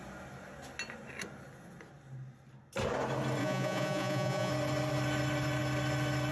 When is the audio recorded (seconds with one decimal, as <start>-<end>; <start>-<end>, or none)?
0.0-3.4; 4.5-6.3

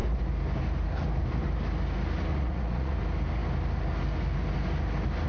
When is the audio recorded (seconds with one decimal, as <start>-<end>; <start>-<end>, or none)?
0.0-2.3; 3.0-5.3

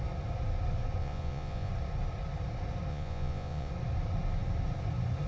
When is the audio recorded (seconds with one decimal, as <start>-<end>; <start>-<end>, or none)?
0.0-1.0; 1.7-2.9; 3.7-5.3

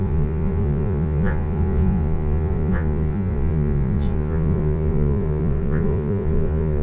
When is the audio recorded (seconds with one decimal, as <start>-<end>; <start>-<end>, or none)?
none

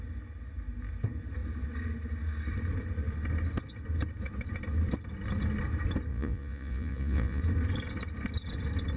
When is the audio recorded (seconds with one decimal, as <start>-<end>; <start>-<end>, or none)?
0.0-6.1; 7.4-9.0

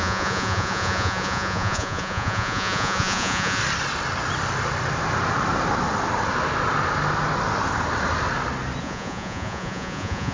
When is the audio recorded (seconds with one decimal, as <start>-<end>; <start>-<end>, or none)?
3.6-8.8

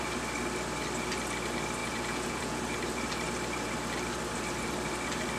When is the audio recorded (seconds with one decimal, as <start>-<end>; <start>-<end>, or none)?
0.0-1.8; 2.6-5.4

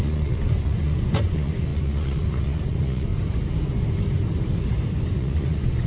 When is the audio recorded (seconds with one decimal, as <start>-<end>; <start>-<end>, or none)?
3.1-5.0